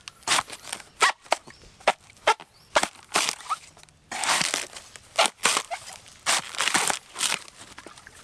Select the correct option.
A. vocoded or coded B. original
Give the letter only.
B